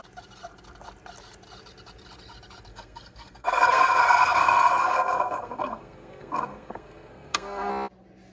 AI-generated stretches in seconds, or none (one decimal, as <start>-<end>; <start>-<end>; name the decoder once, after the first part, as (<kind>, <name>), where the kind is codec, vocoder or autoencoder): 2.7-7.7 (codec, SNAC)